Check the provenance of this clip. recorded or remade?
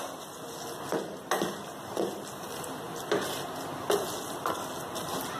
recorded